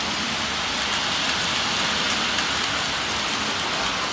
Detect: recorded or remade recorded